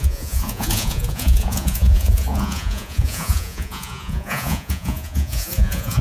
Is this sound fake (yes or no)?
yes